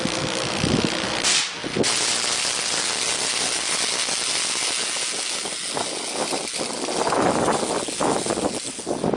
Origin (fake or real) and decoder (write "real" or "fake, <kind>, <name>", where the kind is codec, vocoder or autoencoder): real